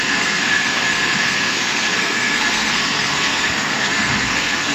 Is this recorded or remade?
remade